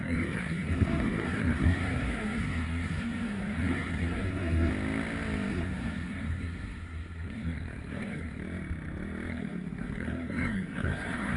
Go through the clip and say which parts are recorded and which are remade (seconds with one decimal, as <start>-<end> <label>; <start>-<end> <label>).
0.0-4.7 remade; 4.7-5.5 recorded; 5.5-8.4 remade; 8.4-9.3 recorded; 9.3-11.4 remade